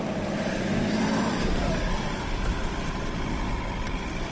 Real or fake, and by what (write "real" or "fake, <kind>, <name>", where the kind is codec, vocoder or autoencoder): fake, vocoder, BigVGAN v2